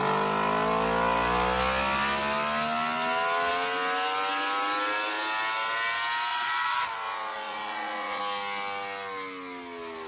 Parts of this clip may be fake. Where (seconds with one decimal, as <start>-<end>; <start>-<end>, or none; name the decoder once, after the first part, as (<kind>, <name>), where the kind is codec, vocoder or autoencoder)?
6.3-8.2 (vocoder, Vocos)